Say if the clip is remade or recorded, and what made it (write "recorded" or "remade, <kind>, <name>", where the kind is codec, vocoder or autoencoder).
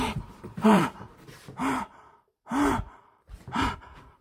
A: remade, vocoder, BigVGAN v2